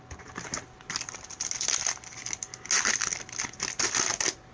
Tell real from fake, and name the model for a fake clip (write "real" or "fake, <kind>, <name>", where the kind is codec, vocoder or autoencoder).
real